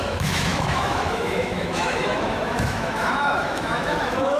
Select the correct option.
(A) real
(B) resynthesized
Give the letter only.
B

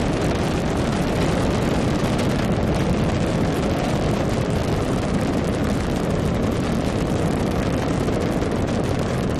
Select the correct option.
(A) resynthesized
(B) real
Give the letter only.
B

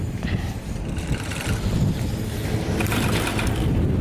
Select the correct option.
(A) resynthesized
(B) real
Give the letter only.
B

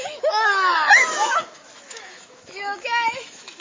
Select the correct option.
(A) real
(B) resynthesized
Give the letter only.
B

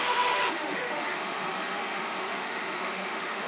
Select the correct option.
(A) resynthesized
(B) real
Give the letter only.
A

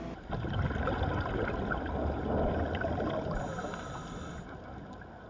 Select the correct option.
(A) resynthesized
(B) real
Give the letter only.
B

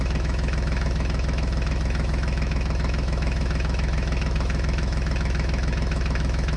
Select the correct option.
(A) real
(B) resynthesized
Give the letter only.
B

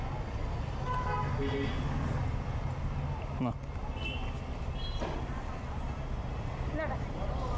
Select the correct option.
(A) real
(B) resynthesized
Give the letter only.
A